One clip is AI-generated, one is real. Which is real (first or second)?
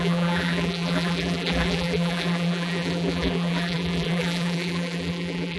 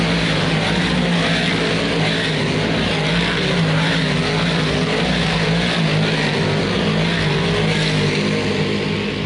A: second